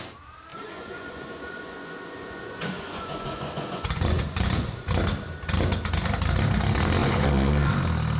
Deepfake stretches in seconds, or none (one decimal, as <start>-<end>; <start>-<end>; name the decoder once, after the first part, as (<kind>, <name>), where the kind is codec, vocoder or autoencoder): 0.5-4.9 (vocoder, Vocos); 7.0-7.7